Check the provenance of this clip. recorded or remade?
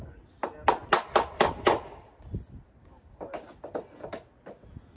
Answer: recorded